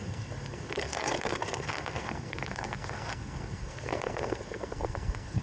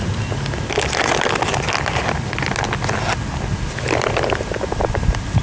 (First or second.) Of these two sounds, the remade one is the first